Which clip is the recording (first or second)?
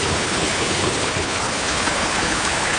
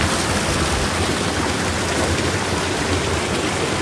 second